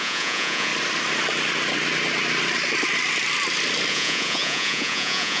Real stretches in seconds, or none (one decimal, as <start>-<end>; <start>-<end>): 0.7-3.9